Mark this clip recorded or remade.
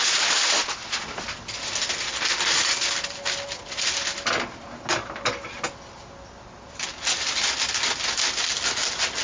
recorded